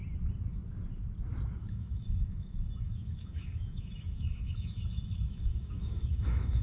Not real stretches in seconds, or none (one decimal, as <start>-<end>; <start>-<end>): 1.7-6.6